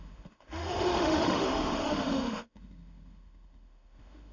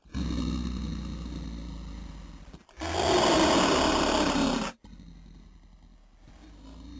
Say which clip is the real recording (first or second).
second